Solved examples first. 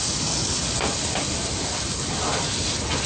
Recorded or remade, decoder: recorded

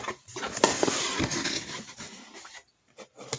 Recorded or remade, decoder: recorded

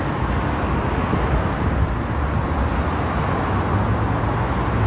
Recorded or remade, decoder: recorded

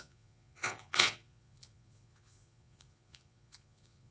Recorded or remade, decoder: remade, vocoder, Vocos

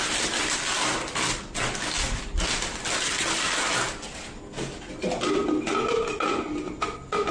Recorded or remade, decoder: recorded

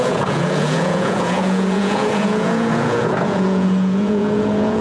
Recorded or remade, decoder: remade, vocoder, Vocos